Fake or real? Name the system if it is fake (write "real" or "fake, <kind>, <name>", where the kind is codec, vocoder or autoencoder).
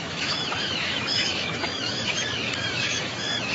fake, autoencoder, DAC-VAE